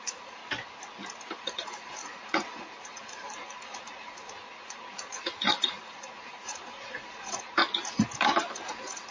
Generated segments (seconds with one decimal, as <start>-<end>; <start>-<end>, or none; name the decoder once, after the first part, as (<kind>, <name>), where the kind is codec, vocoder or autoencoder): 0.0-0.4 (vocoder, Vocos); 1.4-7.6; 8.7-9.1